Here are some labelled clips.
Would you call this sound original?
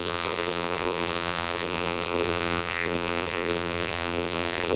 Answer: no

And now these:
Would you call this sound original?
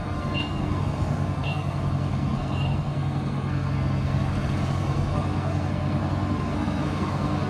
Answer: no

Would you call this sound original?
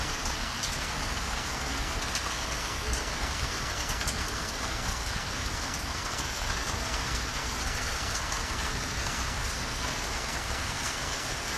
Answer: no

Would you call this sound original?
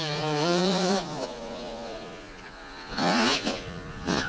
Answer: no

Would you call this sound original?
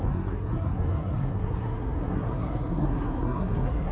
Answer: no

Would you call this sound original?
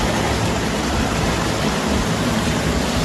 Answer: yes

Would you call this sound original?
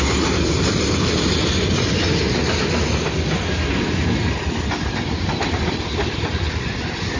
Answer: yes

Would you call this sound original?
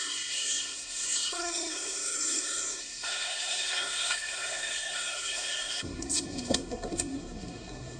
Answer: no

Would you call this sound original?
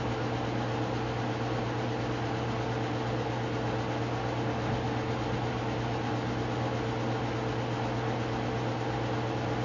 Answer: yes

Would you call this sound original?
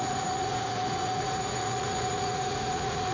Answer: no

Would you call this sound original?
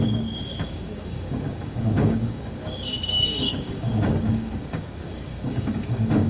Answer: no